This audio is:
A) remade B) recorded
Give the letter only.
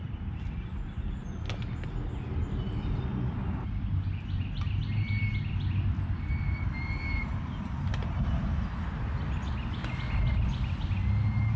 B